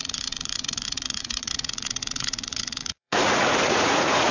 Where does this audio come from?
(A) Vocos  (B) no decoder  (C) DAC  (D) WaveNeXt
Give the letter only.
A